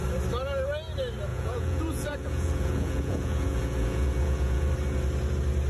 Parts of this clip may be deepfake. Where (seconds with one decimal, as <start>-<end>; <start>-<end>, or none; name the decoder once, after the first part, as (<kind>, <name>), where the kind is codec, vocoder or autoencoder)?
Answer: 1.3-4.7 (vocoder, Vocos)